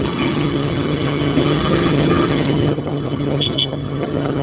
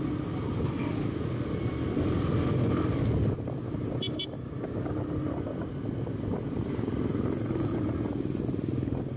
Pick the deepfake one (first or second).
first